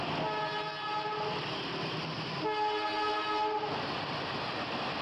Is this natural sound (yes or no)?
yes